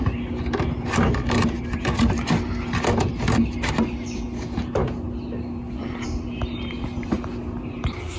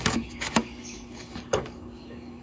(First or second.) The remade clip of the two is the second